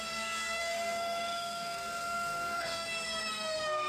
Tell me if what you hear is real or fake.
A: fake